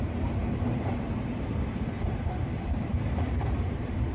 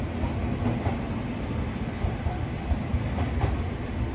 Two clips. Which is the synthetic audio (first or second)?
first